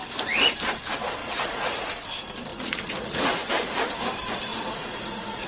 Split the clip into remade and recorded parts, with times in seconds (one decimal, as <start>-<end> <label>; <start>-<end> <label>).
0.0-1.2 recorded; 1.2-1.9 remade; 1.9-2.5 recorded; 2.5-3.5 remade; 3.5-4.5 recorded; 4.5-5.5 remade